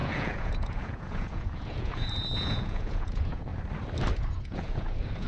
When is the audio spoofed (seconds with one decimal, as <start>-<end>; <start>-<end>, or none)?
0.0-3.5; 4.2-5.3